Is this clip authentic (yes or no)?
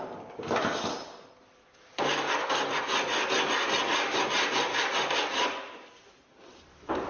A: yes